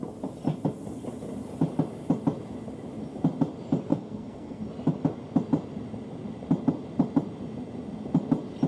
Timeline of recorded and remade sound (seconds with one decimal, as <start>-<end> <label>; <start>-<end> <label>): 0.0-3.9 recorded; 3.9-4.6 remade; 4.6-8.7 recorded